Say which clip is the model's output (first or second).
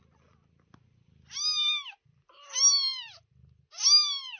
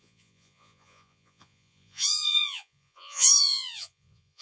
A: second